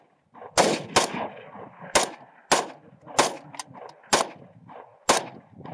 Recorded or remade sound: recorded